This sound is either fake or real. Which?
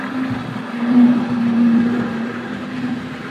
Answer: fake